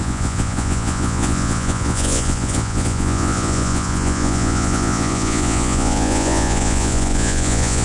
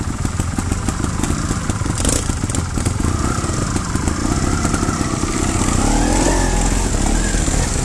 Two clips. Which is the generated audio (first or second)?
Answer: first